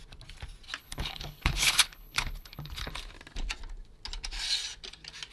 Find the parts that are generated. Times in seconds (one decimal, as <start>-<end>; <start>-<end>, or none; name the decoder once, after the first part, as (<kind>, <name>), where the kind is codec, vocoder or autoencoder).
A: 0.8-2.9 (codec, HILCodec)